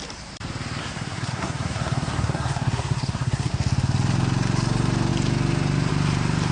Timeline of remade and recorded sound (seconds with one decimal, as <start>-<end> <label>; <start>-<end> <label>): 0.0-0.8 recorded; 0.8-3.5 remade; 3.5-6.5 recorded